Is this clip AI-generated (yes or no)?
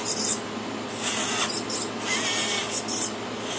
no